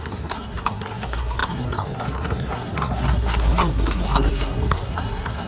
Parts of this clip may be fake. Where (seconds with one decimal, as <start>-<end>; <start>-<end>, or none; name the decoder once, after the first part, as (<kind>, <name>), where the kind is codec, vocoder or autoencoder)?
0.0-5.5 (codec, SNAC)